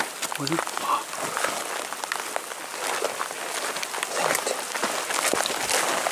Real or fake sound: real